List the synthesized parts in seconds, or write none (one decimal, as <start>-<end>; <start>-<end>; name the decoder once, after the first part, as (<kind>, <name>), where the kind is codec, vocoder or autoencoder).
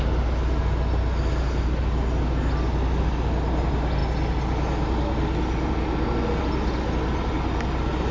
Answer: none